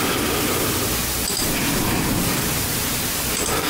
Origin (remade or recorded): recorded